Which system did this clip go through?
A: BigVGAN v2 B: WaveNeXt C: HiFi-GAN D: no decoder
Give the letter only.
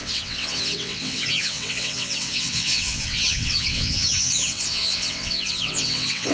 B